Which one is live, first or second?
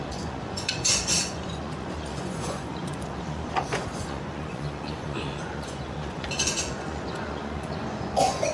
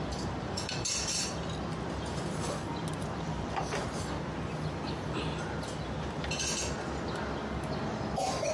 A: second